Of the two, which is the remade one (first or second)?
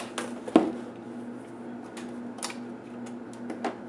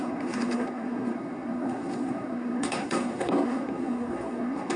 second